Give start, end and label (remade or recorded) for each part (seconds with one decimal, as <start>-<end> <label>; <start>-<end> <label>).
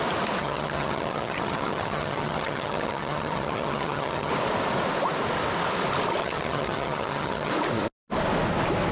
0.0-0.4 recorded; 0.4-4.3 remade; 4.3-6.2 recorded; 6.2-7.5 remade; 7.5-8.9 recorded